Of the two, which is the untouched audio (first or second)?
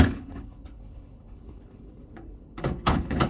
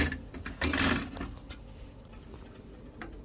second